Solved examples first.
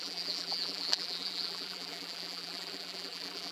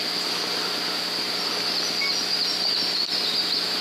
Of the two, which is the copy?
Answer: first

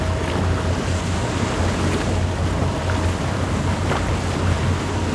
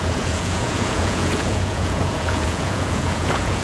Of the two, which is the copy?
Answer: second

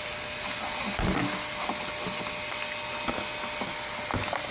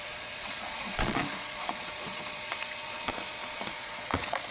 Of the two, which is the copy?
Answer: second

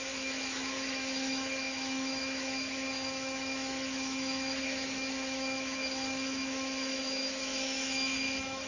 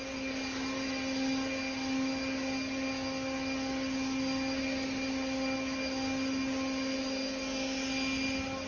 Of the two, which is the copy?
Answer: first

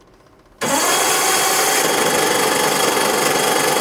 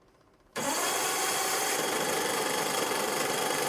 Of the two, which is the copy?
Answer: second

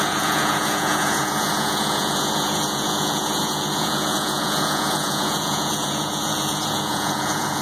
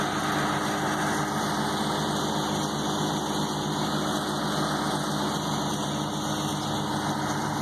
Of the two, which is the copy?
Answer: first